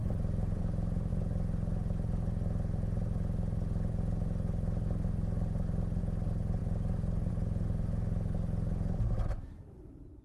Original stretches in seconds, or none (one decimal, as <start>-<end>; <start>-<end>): 0.6-10.2